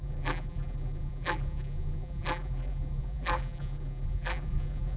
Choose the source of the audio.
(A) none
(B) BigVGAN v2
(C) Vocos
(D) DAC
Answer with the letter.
B